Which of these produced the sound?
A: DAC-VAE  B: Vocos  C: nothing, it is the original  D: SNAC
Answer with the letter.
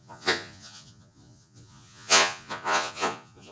B